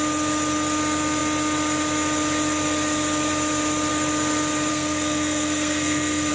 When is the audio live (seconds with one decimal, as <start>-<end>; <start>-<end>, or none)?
0.0-4.7